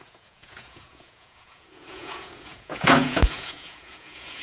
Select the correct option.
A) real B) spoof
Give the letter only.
B